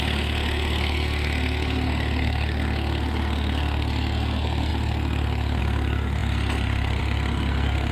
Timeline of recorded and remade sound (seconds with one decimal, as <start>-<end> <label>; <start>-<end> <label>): 0.0-7.9 remade